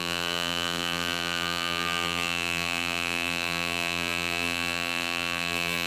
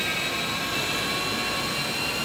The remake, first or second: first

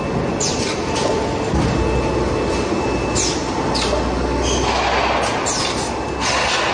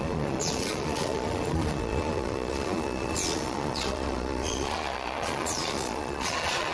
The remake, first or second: second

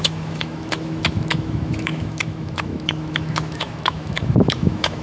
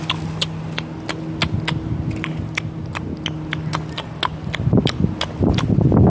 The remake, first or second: first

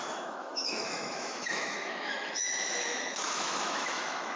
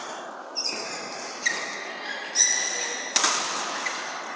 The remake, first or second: first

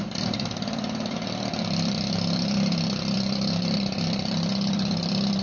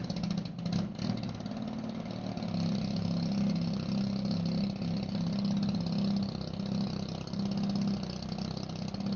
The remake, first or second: first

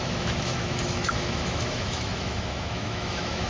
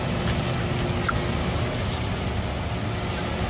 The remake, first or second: first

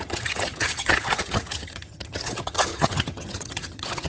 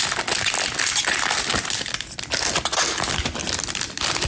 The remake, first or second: first